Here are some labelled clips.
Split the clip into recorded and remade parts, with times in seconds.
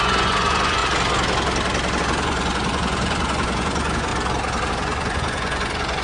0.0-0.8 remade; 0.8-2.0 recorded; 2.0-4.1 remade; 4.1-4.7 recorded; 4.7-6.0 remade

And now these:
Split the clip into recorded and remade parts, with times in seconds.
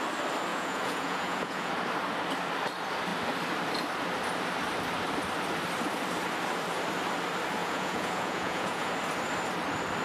0.0-0.5 recorded; 0.5-1.7 remade; 1.7-7.6 recorded; 7.6-8.9 remade; 8.9-10.0 recorded